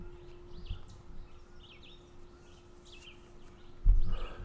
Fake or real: real